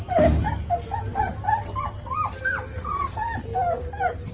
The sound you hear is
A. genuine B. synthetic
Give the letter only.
A